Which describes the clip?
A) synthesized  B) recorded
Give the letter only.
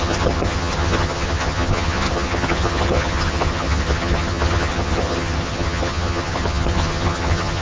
A